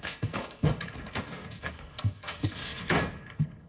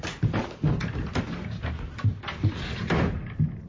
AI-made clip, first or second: first